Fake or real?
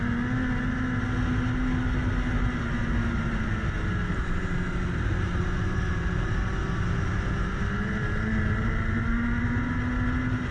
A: real